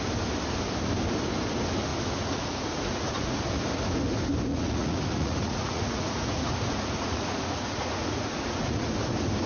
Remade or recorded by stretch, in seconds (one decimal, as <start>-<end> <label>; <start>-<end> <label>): 0.0-1.9 recorded; 1.9-3.4 remade; 3.4-4.5 recorded; 4.5-8.9 remade; 8.9-9.5 recorded